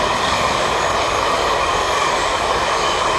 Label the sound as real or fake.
fake